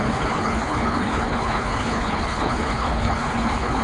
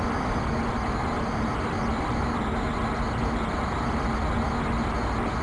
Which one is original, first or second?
second